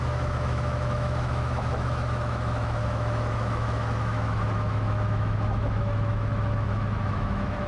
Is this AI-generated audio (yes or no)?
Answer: yes